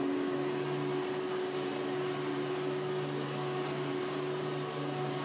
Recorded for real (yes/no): yes